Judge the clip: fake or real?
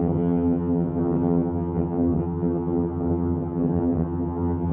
fake